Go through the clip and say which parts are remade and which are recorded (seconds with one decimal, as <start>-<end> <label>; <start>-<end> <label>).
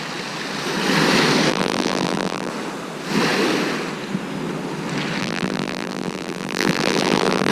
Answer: 0.0-1.5 recorded; 1.5-2.5 remade; 2.5-5.2 recorded; 5.2-7.5 remade